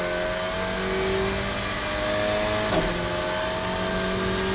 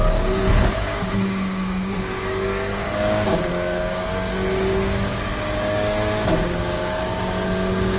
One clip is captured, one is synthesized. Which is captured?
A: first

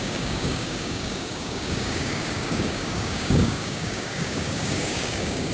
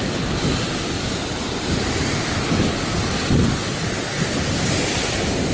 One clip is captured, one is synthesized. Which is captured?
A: second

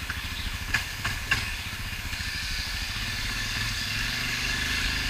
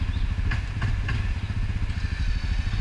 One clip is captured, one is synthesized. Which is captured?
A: second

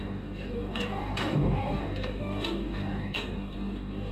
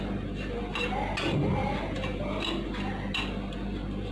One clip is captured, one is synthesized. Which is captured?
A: second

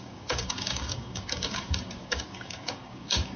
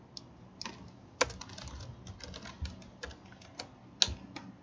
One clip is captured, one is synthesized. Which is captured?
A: second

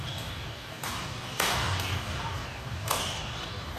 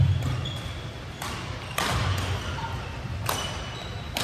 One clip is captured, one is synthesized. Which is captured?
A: second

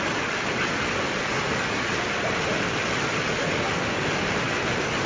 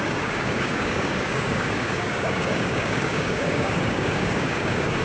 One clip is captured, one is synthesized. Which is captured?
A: first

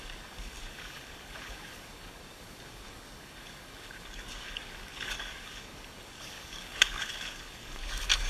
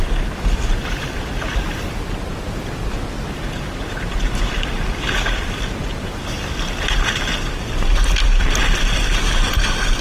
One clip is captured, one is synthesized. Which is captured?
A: second